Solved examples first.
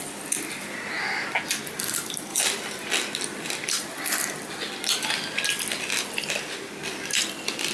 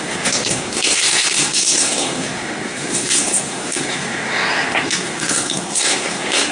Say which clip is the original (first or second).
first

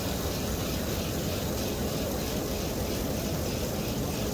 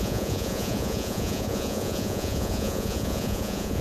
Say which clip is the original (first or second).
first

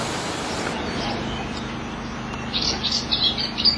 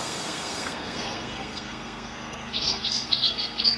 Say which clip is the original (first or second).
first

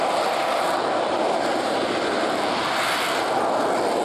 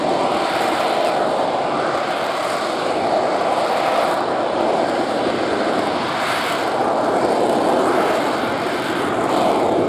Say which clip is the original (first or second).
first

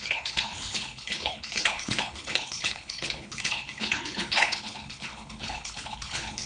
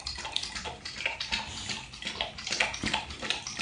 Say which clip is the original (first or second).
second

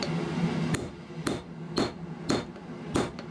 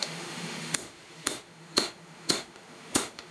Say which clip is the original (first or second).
first